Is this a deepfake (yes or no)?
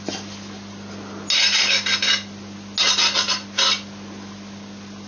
no